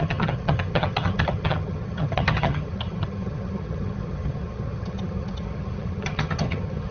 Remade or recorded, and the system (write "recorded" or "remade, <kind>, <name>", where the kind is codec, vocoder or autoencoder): remade, vocoder, HiFi-GAN